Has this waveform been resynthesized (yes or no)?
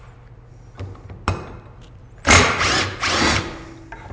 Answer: no